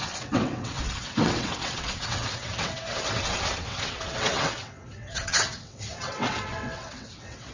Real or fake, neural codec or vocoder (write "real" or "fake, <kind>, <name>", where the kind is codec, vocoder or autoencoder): fake, vocoder, WaveNeXt